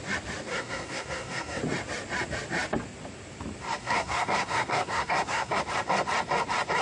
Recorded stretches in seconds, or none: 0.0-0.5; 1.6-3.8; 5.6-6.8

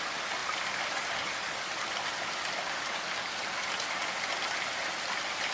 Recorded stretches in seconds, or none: 0.0-0.4; 1.4-5.5

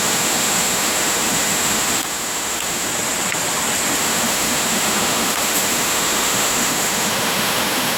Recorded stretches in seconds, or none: 2.9-4.0